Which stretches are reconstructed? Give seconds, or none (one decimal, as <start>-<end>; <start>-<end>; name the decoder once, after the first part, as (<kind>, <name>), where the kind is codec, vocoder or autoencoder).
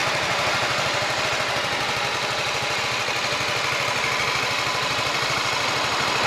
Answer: 0.0-1.2 (vocoder, BigVGAN v2); 2.1-2.8